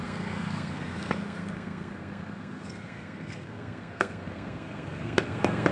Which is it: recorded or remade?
remade